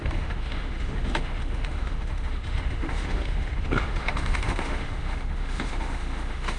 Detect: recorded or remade remade